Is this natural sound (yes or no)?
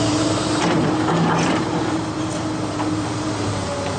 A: no